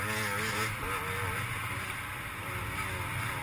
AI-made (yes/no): no